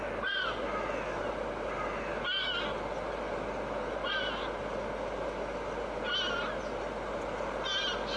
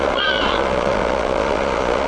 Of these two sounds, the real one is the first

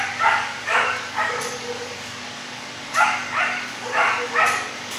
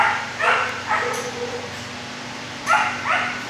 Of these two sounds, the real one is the second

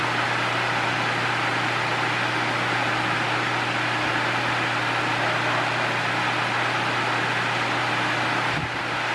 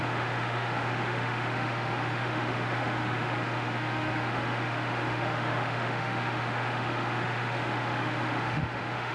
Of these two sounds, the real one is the first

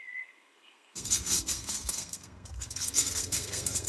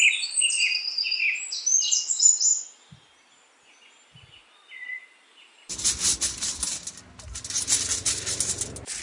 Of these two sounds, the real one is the second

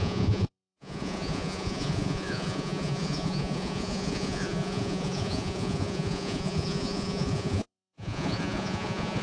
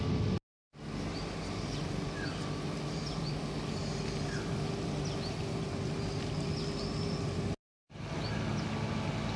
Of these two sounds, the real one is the second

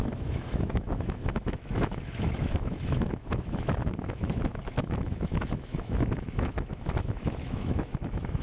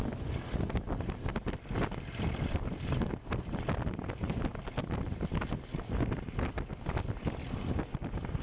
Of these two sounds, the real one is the second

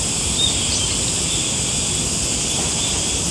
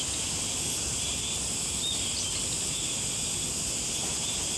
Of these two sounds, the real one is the second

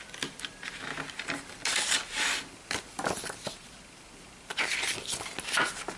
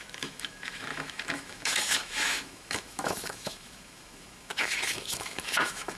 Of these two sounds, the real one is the first